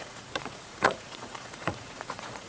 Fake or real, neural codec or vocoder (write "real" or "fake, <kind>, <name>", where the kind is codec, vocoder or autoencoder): fake, vocoder, Vocos